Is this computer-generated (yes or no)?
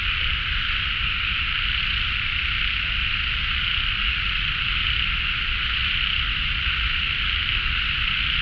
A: no